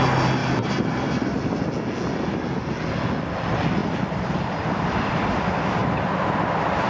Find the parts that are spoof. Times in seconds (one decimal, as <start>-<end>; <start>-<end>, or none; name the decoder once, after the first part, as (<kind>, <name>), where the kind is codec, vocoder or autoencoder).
0.4-1.6 (vocoder, BigVGAN v2); 3.8-5.0; 5.8-6.9